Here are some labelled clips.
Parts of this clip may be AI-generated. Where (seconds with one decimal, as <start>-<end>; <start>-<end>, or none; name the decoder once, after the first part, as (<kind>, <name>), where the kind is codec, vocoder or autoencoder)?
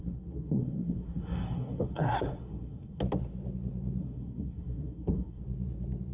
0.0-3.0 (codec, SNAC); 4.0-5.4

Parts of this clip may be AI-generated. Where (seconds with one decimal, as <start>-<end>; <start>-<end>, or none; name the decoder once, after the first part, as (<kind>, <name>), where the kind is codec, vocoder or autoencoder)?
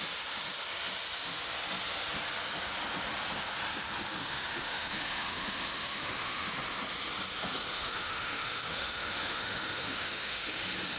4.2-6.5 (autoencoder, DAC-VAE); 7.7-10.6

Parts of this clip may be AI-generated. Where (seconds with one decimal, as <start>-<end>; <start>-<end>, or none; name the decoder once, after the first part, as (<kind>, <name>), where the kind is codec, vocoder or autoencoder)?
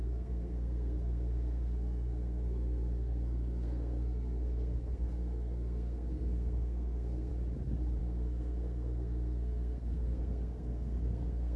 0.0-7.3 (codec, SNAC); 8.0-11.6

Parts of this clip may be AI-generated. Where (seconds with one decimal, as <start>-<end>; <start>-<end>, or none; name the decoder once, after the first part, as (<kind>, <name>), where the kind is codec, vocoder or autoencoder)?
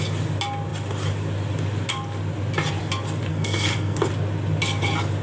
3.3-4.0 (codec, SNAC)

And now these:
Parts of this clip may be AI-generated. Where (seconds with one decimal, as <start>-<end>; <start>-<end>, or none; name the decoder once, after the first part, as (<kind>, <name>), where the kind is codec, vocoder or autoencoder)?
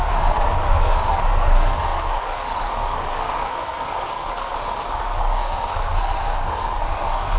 0.0-7.4 (codec, SNAC)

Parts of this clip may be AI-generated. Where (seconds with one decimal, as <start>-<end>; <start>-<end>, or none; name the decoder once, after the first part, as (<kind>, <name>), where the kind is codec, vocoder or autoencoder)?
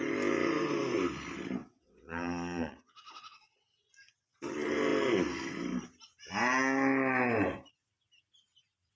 1.6-3.9 (vocoder, WaveNeXt)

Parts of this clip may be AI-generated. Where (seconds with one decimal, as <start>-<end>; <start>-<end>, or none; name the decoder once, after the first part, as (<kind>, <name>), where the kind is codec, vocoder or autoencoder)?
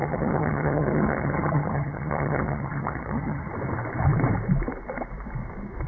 0.0-3.5 (vocoder, HiFi-GAN)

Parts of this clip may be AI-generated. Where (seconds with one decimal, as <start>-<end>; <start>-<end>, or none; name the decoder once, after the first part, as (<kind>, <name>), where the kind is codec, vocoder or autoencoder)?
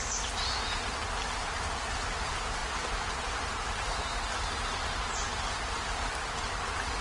none